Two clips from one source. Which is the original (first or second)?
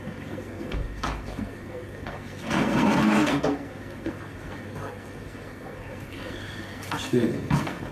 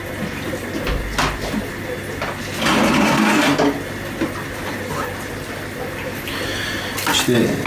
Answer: second